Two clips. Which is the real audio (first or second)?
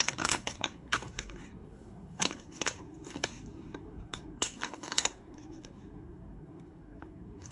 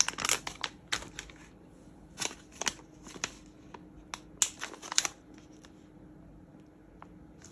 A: second